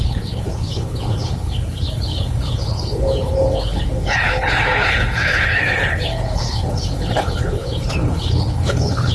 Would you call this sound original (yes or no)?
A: no